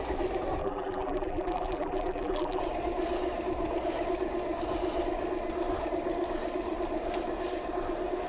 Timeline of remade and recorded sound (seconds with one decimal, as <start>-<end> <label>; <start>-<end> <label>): 0.0-0.6 recorded; 0.6-2.6 remade; 2.6-8.3 recorded